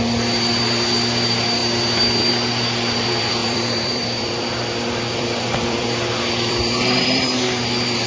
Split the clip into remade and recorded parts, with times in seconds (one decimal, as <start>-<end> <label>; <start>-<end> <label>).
0.0-1.6 remade; 1.6-2.3 recorded; 2.3-8.1 remade